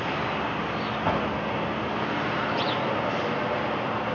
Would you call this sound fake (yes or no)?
no